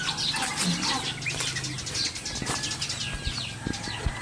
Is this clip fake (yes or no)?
no